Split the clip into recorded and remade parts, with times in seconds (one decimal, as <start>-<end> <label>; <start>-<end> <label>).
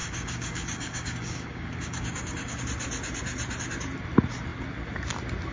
0.0-2.6 remade; 2.6-5.5 recorded